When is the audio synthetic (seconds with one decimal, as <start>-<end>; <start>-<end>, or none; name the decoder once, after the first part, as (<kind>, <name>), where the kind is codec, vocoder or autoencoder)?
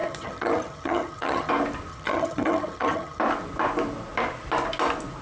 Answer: 0.0-1.5 (vocoder, HiFi-GAN); 1.9-3.2